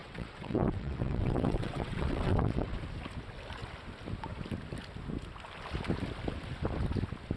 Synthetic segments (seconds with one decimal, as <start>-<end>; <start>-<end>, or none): 0.0-2.8